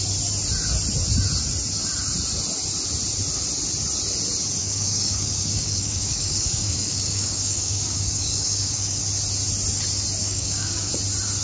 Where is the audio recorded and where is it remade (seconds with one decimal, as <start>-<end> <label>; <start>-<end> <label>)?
0.0-4.6 recorded; 4.6-9.0 remade; 9.0-10.2 recorded; 10.2-10.9 remade; 10.9-11.4 recorded